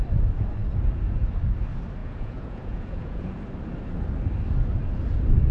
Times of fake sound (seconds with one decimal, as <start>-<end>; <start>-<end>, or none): 0.6-1.3; 2.0-3.4

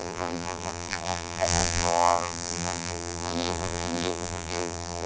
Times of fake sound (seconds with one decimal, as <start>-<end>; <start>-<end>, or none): 0.0-5.1

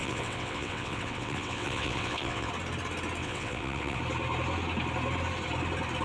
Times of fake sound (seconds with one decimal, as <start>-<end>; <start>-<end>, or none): 0.0-2.5; 3.2-4.0